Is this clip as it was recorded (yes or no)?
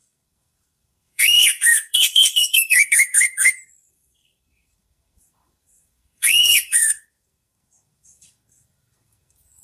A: no